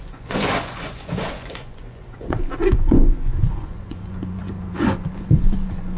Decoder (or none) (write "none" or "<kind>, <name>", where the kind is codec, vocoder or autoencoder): vocoder, Vocos